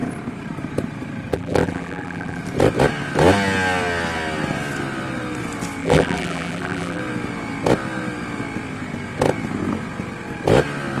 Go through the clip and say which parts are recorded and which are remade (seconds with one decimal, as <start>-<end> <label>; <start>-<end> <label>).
0.0-1.3 recorded; 1.3-2.4 remade; 2.4-5.8 recorded; 5.8-7.0 remade; 7.0-11.0 recorded